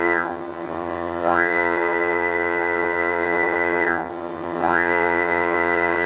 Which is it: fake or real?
fake